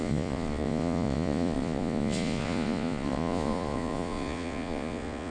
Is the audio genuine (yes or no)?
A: no